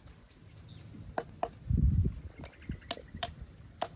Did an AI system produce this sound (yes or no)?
no